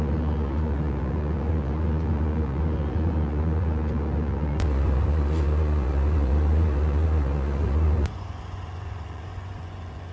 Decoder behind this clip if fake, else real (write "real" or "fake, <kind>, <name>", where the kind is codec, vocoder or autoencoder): fake, vocoder, Vocos